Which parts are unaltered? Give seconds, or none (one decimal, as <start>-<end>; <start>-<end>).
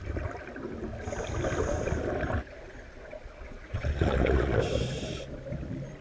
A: 0.0-2.4; 4.6-6.0